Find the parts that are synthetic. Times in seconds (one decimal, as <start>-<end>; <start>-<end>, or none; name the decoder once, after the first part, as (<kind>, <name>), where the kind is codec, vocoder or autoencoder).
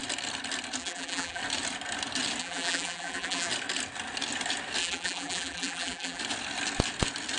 0.8-1.4 (vocoder, BigVGAN v2); 2.4-3.5; 4.8-6.2